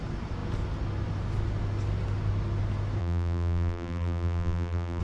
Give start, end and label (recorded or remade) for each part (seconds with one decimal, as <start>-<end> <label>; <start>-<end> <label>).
0.0-3.0 recorded; 3.0-5.0 remade